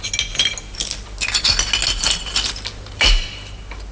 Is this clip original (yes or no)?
yes